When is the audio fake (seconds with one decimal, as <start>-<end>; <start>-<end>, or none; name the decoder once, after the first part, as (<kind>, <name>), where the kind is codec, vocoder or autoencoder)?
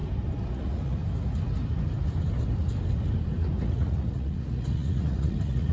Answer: 0.5-1.0 (vocoder, Vocos); 3.6-5.7